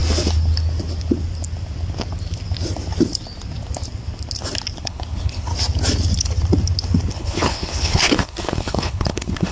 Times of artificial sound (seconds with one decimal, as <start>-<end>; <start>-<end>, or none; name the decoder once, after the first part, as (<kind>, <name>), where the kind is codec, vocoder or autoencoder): 4.8-5.5 (codec, HILCodec); 7.1-9.5